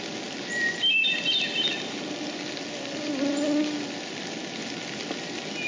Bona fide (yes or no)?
yes